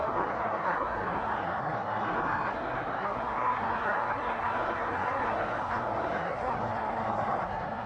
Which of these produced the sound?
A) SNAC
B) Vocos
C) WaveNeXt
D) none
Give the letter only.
A